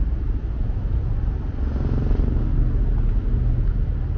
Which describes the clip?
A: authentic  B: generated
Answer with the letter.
A